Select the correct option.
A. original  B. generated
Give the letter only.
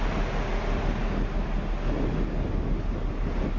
A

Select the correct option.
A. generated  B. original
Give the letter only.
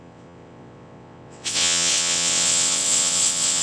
A